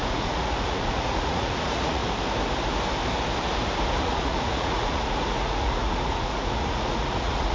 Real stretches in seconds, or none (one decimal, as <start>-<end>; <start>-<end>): 2.0-4.0